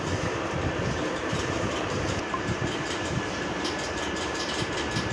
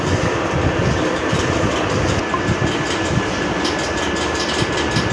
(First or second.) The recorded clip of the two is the second